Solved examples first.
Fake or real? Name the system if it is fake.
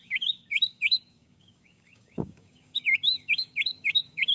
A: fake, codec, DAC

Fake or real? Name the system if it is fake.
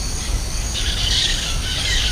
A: fake, codec, DAC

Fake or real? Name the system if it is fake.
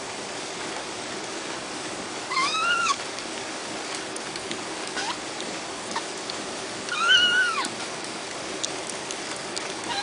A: fake, codec, DAC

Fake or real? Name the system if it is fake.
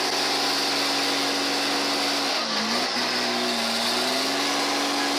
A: real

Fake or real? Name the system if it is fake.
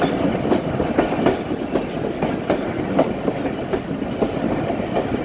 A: real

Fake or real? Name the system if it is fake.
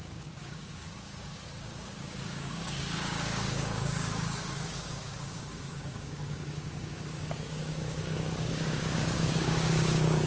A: fake, codec, DAC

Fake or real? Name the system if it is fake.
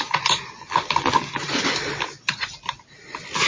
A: real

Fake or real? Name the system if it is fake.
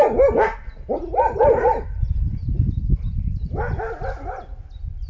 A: real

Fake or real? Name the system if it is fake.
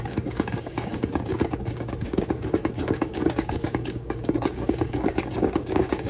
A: fake, codec, DAC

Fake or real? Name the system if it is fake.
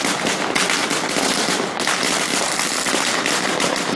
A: real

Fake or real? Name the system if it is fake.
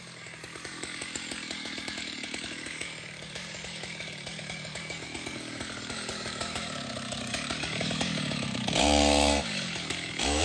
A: fake, codec, DAC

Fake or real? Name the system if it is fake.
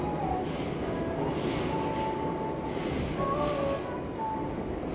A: real